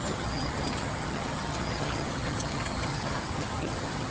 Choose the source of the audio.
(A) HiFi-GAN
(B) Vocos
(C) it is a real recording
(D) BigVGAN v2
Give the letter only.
A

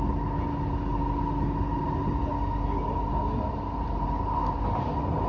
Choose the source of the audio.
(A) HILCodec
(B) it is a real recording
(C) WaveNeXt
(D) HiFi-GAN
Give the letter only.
B